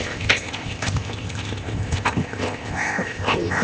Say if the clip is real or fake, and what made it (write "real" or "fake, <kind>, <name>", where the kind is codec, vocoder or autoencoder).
fake, codec, ZipCodec